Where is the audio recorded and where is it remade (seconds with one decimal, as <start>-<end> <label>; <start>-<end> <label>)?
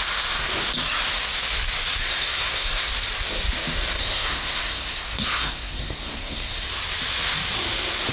0.0-2.0 recorded; 2.0-2.9 remade; 2.9-4.0 recorded; 4.0-6.7 remade; 6.7-8.1 recorded